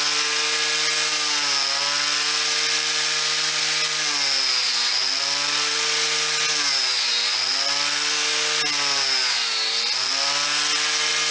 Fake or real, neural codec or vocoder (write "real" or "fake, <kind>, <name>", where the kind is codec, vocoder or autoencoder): real